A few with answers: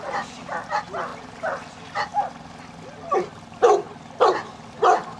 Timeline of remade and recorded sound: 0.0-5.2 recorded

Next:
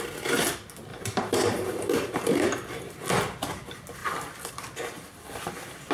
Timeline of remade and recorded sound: 0.0-0.9 recorded; 0.9-2.3 remade; 2.3-5.9 recorded

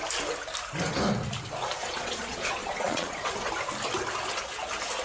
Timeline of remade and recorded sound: 0.0-1.8 recorded; 1.8-3.5 remade; 3.5-5.0 recorded

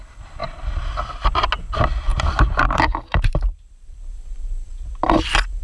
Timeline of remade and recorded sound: 0.0-2.1 recorded; 2.1-4.9 remade; 4.9-5.6 recorded

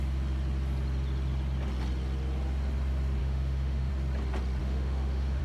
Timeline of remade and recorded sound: 0.0-3.2 recorded; 3.2-3.9 remade; 3.9-4.6 recorded; 4.6-5.4 remade

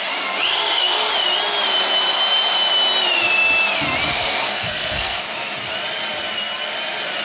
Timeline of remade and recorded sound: 0.0-0.5 recorded; 0.5-1.1 remade; 1.1-4.1 recorded; 4.1-5.2 remade; 5.2-7.2 recorded

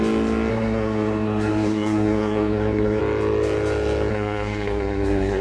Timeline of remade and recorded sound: 0.0-0.5 recorded; 0.5-3.0 remade; 3.0-4.1 recorded; 4.1-5.4 remade

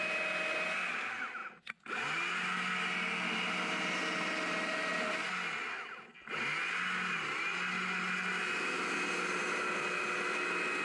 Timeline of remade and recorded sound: 0.0-10.8 recorded